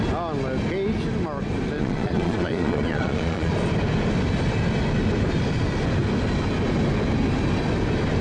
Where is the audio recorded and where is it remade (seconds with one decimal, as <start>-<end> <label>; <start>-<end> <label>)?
0.0-1.8 recorded; 1.8-3.5 remade; 3.5-8.2 recorded